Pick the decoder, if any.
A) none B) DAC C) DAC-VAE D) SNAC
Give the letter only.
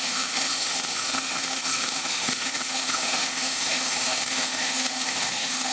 C